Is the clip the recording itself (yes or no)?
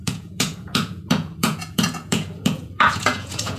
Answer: no